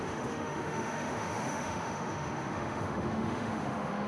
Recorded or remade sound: remade